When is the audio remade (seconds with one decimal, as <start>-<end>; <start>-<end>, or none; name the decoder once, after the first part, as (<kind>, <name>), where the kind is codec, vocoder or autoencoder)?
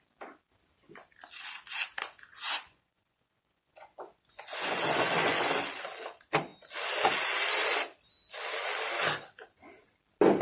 2.3-5.5 (vocoder, Vocos)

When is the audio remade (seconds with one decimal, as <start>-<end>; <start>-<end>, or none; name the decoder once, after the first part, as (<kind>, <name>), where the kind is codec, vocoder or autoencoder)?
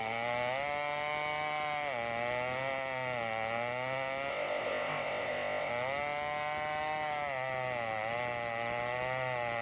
4.3-5.7 (codec, ZipCodec)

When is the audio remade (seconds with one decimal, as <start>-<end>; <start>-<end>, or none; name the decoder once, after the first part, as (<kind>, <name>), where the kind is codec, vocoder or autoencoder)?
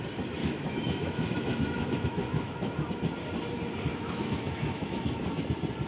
0.4-2.9 (autoencoder, DAC-VAE); 3.9-5.2